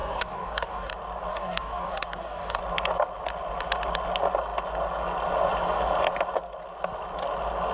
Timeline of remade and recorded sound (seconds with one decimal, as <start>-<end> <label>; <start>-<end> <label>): 0.0-0.9 remade; 0.9-1.3 recorded; 1.3-2.6 remade; 2.6-7.7 recorded